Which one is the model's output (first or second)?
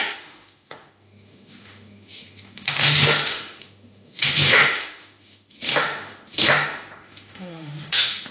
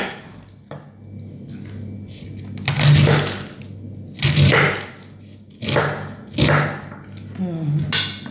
first